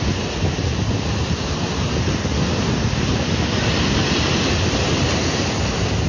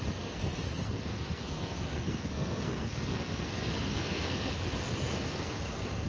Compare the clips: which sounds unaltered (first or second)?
first